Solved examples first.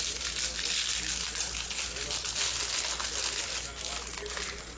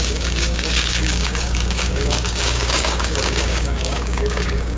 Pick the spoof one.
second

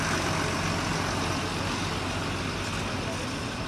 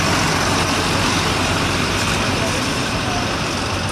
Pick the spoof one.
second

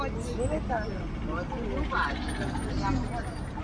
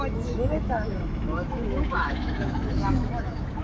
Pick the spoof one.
second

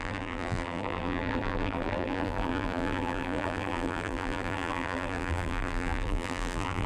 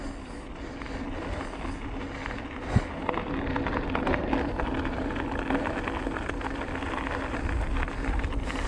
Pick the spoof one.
first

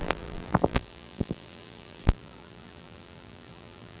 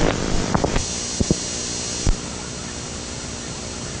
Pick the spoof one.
first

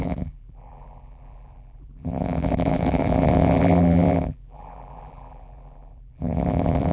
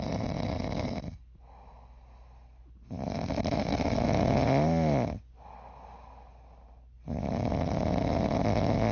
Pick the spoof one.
first